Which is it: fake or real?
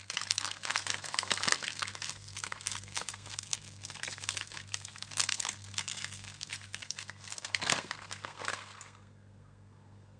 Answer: fake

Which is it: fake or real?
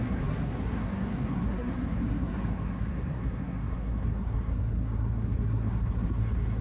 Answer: fake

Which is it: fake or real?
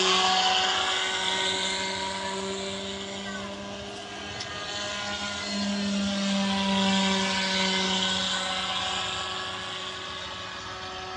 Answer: real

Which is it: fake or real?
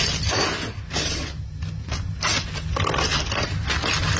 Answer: real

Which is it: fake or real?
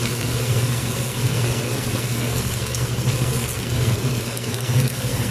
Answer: fake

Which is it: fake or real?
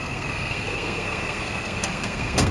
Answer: fake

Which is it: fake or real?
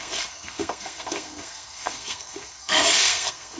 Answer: fake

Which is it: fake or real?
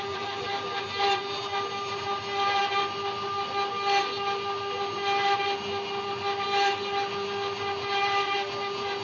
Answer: real